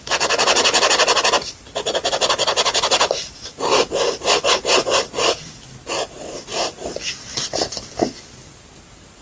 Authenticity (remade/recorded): recorded